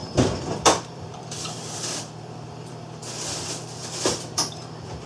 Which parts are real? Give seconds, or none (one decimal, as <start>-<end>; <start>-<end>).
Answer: 3.1-3.8; 4.5-5.1